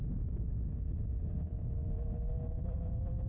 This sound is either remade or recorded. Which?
remade